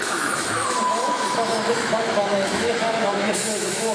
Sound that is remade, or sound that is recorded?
remade